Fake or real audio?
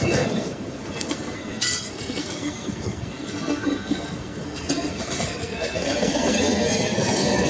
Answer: fake